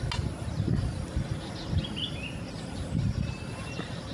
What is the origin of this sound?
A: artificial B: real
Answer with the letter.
B